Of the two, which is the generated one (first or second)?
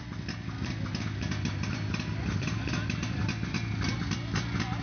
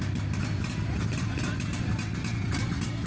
second